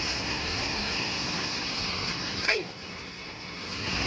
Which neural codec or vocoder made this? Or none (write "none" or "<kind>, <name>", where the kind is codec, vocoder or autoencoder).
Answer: codec, SNAC